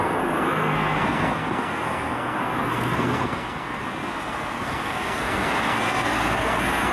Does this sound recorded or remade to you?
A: remade